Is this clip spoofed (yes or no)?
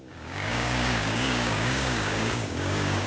yes